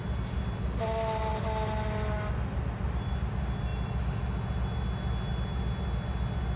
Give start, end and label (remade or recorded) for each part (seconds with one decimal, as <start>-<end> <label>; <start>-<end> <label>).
0.0-6.6 recorded